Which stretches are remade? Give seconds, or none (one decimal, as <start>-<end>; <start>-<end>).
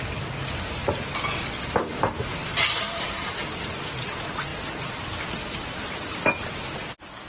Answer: 0.8-3.9